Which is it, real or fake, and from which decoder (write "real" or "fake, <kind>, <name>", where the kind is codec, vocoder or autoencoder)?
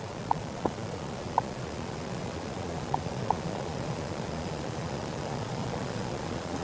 fake, vocoder, Vocos